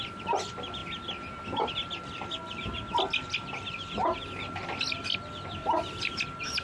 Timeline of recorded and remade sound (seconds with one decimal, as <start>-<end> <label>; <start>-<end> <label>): 0.0-6.6 recorded